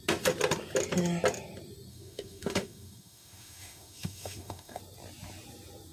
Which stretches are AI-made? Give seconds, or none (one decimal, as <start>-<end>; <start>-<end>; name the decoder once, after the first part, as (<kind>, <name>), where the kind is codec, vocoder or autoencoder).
1.9-4.8 (autoencoder, DAC-VAE)

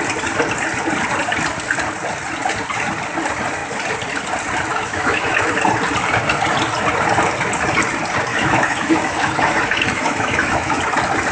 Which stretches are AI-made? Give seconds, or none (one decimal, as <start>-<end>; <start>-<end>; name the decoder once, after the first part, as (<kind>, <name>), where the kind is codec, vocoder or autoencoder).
4.7-5.5 (autoencoder, DAC-VAE); 8.3-10.8